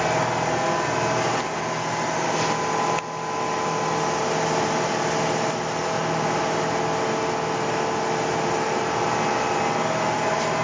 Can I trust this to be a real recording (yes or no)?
yes